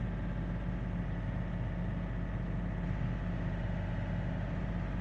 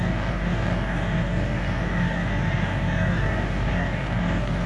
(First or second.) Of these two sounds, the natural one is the first